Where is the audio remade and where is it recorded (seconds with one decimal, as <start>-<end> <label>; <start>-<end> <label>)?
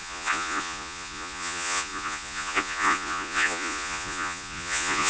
0.0-5.1 remade